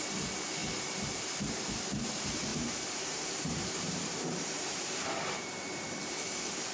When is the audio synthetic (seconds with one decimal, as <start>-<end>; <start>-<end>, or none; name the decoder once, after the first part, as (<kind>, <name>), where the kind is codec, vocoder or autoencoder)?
2.5-6.2 (vocoder, BigVGAN v2)